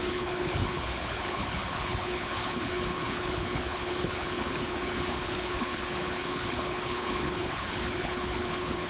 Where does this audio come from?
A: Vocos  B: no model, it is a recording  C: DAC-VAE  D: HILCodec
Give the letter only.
D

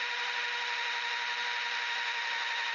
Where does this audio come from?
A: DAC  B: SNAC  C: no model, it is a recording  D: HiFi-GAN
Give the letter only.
C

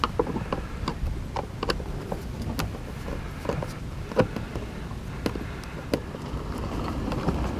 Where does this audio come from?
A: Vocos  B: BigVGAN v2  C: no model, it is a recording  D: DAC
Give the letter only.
C